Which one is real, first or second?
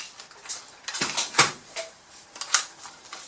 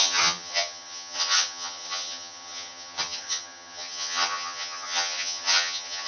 first